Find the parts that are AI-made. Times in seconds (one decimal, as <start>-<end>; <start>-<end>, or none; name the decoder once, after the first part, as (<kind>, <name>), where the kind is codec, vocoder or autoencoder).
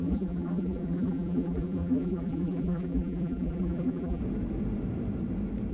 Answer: 0.0-4.2 (vocoder, BigVGAN v2)